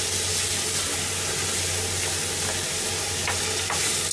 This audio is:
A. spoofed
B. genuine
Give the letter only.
B